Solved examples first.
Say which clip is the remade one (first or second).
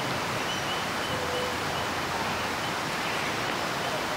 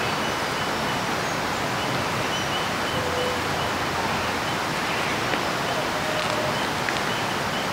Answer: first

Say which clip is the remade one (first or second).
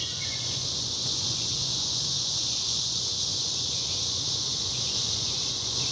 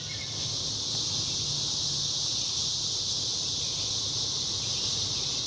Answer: first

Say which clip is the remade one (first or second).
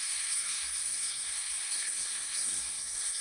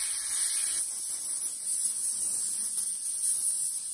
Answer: first